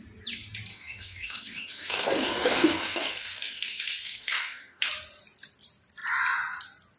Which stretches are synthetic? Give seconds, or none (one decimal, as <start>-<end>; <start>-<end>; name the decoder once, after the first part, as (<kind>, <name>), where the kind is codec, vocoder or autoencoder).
0.7-4.9 (codec, DAC)

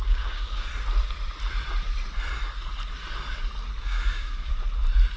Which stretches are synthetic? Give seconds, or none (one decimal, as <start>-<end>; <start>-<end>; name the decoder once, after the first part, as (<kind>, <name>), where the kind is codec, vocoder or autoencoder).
0.0-0.7 (codec, DAC); 3.8-4.5

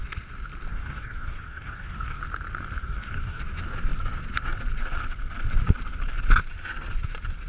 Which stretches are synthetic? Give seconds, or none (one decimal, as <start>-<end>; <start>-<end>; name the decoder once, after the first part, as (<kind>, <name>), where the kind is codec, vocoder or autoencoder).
0.7-2.2 (codec, DAC); 2.8-3.4